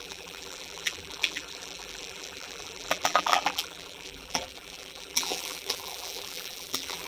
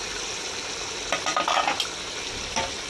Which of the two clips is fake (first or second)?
first